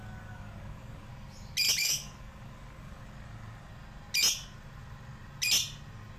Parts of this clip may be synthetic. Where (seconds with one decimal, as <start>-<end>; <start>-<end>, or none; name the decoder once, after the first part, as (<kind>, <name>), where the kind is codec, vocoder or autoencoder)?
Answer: 0.0-1.1 (codec, DAC); 1.8-3.7